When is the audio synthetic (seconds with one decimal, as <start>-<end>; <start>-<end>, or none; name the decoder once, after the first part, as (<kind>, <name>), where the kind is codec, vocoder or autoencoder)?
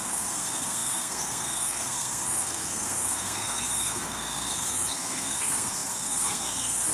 0.0-6.9 (codec, SNAC)